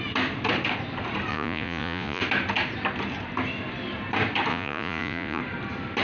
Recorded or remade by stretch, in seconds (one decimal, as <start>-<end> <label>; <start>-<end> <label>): 0.0-1.3 recorded; 1.3-2.2 remade; 2.2-4.5 recorded; 4.5-5.4 remade; 5.4-6.0 recorded